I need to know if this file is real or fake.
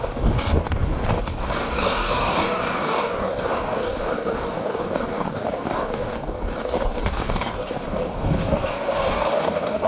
fake